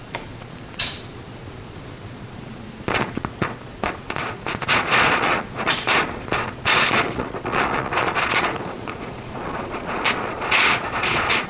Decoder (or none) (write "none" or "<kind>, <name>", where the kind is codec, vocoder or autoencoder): vocoder, Vocos